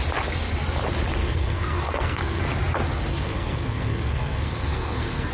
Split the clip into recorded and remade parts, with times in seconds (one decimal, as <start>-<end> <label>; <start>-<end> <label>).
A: 0.0-1.2 recorded; 1.2-2.4 remade; 2.4-3.1 recorded; 3.1-5.3 remade